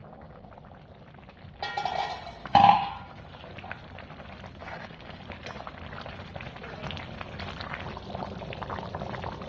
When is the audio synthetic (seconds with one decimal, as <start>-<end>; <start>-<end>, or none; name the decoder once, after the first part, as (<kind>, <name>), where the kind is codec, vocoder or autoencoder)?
0.0-0.5 (codec, DAC); 2.4-3.2; 4.6-5.2

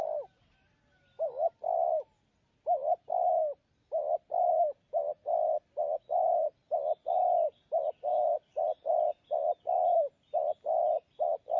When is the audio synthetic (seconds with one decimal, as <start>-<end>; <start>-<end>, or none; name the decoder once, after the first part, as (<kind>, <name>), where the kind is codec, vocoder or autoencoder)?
none

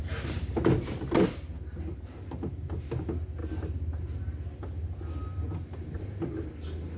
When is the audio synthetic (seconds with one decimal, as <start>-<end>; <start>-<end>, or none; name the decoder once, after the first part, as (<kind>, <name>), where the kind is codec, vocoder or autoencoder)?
none